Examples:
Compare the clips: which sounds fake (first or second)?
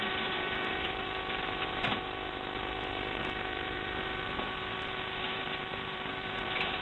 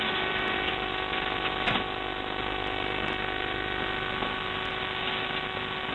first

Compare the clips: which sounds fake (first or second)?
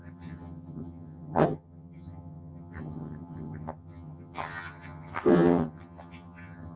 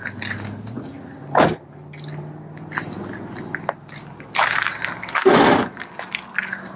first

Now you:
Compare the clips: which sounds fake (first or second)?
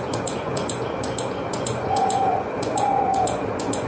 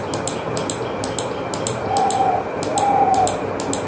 first